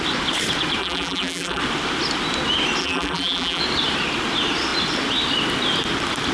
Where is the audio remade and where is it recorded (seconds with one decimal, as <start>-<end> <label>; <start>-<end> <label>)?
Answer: 0.0-0.8 recorded; 0.8-1.6 remade; 1.6-2.8 recorded; 2.8-3.6 remade; 3.6-6.3 recorded